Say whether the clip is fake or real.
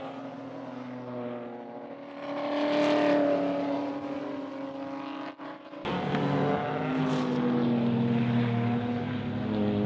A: real